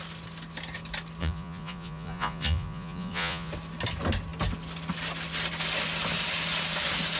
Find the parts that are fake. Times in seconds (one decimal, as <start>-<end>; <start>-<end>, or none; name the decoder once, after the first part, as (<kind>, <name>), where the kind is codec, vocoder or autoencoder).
1.2-3.5 (vocoder, Vocos)